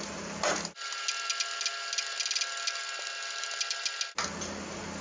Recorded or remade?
recorded